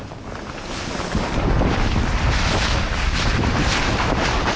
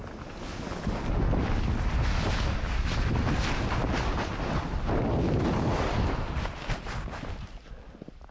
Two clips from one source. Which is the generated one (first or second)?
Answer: first